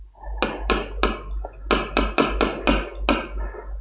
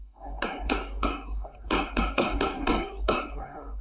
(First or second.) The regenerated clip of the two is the second